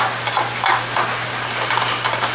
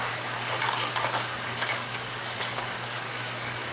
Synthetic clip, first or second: second